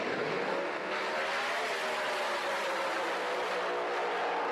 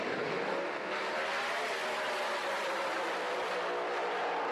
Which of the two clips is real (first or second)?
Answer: first